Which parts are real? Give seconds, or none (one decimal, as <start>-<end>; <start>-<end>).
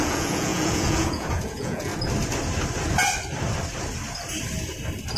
1.9-5.2